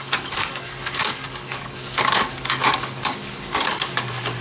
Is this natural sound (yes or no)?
no